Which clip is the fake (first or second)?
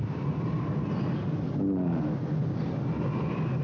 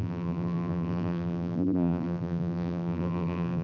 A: second